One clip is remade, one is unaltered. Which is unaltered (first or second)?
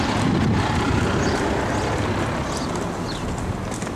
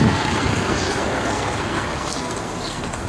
first